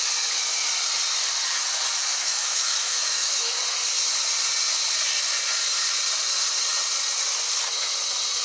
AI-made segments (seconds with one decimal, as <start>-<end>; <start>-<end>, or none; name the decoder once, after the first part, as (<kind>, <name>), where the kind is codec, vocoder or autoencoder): 2.1-3.5 (autoencoder, DAC-VAE)